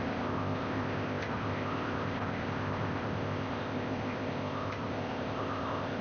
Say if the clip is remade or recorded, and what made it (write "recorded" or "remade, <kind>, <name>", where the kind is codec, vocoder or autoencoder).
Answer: remade, codec, ZipCodec